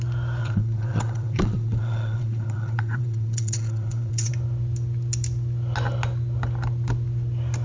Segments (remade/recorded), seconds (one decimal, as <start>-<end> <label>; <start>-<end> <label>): 0.0-0.4 recorded; 0.4-4.3 remade; 4.3-7.6 recorded